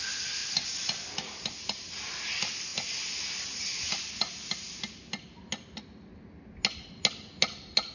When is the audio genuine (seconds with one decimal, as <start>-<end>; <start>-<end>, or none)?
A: 0.0-7.9